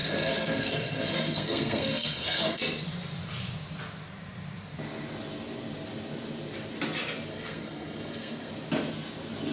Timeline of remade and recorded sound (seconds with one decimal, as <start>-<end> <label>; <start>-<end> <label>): 0.0-2.6 remade; 2.6-7.3 recorded; 7.3-8.5 remade; 8.5-9.5 recorded